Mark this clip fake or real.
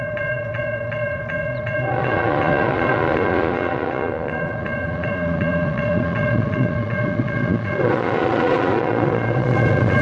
fake